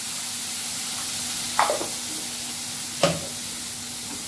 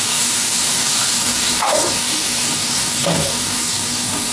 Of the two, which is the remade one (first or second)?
second